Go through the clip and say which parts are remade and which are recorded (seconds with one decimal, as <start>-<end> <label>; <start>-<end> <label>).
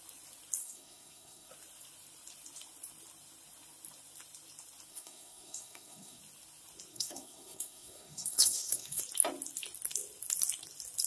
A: 0.0-0.6 recorded; 0.6-1.5 remade; 1.5-4.9 recorded; 4.9-6.2 remade; 6.2-6.9 recorded; 6.9-9.0 remade; 9.0-11.1 recorded